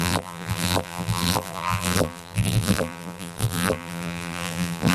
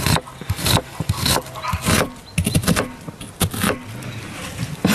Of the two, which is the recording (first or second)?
second